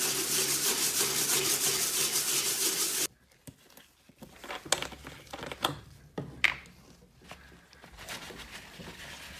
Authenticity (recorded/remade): recorded